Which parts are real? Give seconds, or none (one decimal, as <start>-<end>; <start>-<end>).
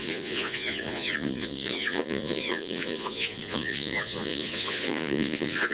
none